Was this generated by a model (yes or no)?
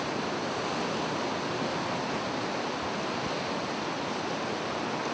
no